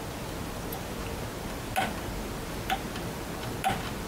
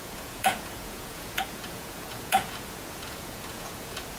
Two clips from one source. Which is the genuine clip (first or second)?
first